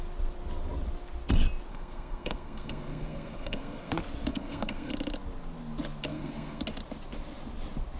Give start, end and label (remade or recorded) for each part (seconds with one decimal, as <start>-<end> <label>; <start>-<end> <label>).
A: 0.0-1.7 recorded; 1.7-3.9 remade; 3.9-4.3 recorded; 4.3-4.9 remade; 4.9-6.1 recorded; 6.1-6.6 remade; 6.6-8.0 recorded